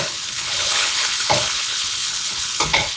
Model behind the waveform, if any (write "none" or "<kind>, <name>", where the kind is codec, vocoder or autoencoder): codec, HILCodec